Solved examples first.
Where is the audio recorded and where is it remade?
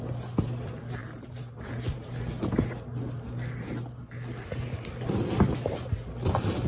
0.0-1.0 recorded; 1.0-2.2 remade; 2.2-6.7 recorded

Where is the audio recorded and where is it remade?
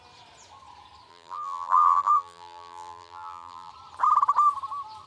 0.0-1.1 recorded; 1.1-3.7 remade; 3.7-5.1 recorded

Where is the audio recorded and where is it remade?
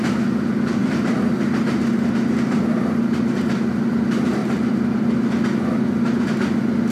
0.0-4.4 recorded; 4.4-5.1 remade; 5.1-6.9 recorded